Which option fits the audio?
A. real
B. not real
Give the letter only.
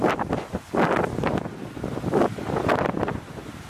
A